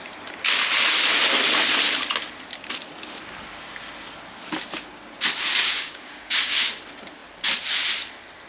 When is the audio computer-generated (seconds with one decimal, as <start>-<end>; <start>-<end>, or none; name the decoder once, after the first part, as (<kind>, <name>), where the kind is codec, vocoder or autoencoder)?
5.6-6.7 (codec, DAC)